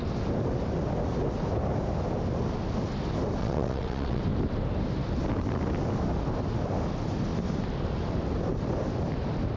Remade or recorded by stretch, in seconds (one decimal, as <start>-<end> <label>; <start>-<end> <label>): 0.0-3.4 recorded; 3.4-4.2 remade; 4.2-9.6 recorded